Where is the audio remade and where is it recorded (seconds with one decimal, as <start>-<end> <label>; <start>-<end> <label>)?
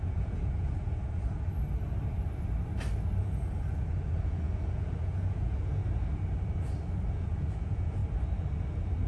0.0-0.9 remade; 0.9-3.2 recorded; 3.2-5.8 remade; 5.8-7.1 recorded; 7.1-8.0 remade; 8.0-9.1 recorded